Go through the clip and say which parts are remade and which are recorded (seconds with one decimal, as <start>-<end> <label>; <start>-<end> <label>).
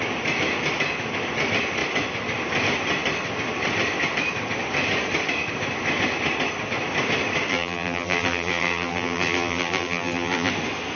0.0-7.5 recorded; 7.5-10.5 remade; 10.5-11.0 recorded